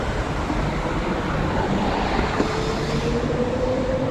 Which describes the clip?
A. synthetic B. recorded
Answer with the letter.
B